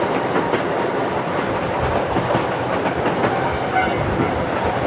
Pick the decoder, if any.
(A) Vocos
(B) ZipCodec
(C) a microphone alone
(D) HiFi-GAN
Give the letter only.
C